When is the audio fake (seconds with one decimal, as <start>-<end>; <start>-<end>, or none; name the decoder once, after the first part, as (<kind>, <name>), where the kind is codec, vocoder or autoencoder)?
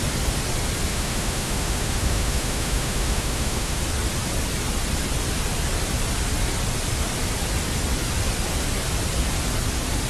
0.9-3.8 (autoencoder, DAC-VAE)